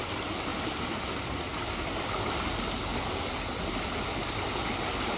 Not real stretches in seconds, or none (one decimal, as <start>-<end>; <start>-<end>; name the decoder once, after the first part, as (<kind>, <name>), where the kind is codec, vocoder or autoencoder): 0.5-1.9 (vocoder, BigVGAN v2); 2.9-3.6